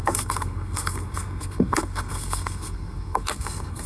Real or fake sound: fake